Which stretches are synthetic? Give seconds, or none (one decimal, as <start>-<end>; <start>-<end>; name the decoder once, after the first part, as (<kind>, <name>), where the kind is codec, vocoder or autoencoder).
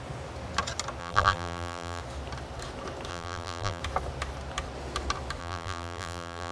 1.0-2.0 (vocoder, BigVGAN v2); 3.1-3.8; 5.4-6.5